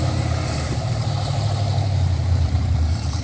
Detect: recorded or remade remade